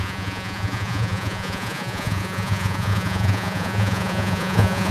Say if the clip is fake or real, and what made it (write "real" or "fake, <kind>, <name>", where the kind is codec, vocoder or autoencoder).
fake, vocoder, Vocos